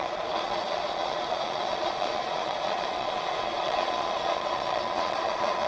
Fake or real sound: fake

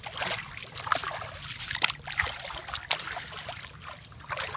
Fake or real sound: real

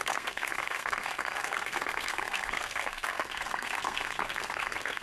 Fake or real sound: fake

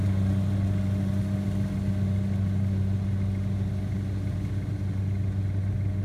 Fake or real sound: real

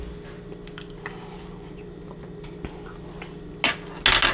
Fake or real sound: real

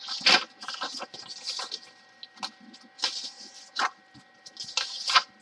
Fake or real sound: real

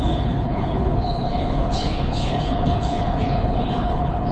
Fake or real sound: fake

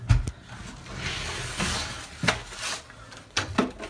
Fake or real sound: real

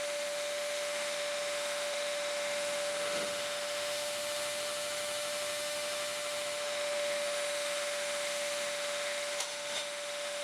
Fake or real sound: fake